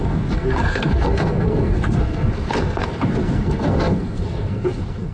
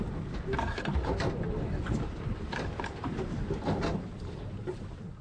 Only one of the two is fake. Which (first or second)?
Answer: first